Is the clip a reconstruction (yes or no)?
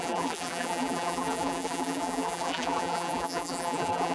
yes